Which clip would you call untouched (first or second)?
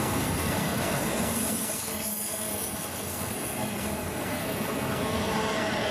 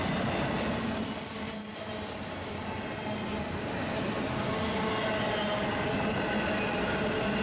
second